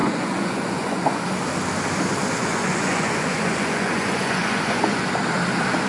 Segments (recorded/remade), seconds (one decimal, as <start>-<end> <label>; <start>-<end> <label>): 0.0-1.2 remade; 1.2-2.4 recorded; 2.4-5.1 remade; 5.1-5.9 recorded